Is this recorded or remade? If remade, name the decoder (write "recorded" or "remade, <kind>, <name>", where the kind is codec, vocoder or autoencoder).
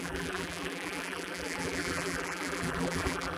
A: remade, vocoder, BigVGAN v2